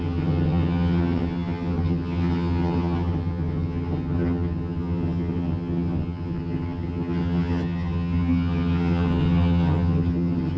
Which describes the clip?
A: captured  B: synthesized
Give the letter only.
B